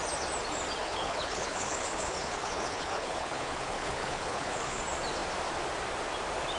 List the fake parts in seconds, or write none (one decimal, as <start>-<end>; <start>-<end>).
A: 0.8-4.8

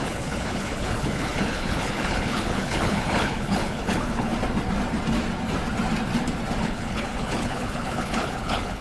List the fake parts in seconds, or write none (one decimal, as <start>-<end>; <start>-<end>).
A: 0.0-4.3; 6.6-8.8

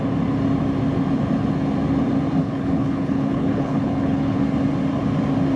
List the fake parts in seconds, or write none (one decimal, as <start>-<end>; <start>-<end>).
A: 2.4-4.4

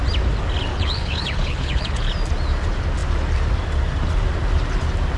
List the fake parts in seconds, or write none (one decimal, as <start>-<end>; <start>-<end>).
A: 0.7-2.1

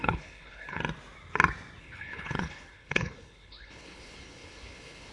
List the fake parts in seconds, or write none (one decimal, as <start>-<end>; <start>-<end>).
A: 0.0-0.8; 1.8-5.1